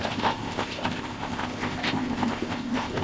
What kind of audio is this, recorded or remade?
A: remade